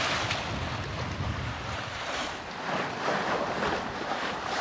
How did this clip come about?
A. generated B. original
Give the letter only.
B